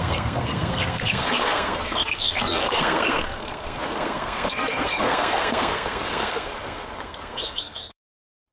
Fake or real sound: fake